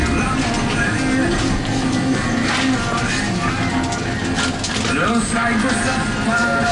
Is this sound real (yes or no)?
yes